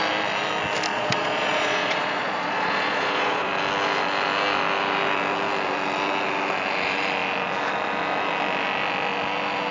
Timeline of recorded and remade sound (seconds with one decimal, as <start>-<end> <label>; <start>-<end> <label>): 0.0-0.9 recorded; 0.9-3.5 remade; 3.5-9.7 recorded